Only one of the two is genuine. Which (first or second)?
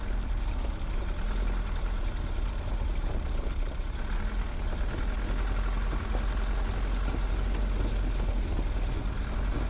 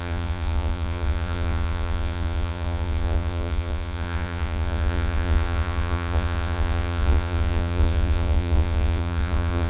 first